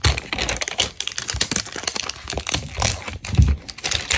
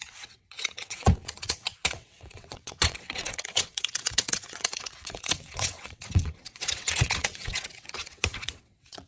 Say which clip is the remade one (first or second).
second